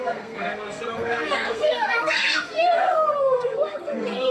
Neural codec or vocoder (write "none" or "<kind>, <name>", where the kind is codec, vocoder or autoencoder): codec, SNAC